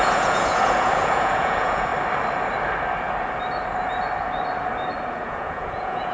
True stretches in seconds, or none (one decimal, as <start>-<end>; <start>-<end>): 1.9-5.1